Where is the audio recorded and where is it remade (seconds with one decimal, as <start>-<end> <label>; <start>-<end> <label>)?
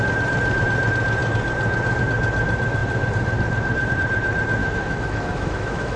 0.0-4.6 recorded; 4.6-6.0 remade